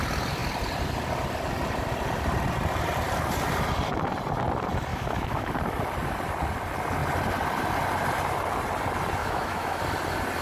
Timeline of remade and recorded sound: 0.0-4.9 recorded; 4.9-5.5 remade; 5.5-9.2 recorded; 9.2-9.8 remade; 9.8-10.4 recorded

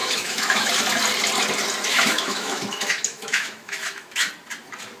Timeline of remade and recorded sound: 0.0-0.7 remade; 0.7-1.9 recorded; 1.9-4.3 remade; 4.3-5.0 recorded